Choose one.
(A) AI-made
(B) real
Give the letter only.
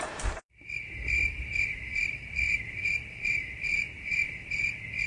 A